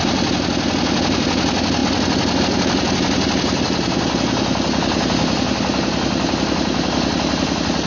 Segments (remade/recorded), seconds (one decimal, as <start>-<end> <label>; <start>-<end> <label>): 0.0-7.9 recorded